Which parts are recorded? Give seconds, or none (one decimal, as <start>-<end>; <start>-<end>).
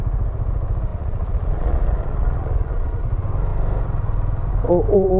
0.0-0.9; 3.0-5.2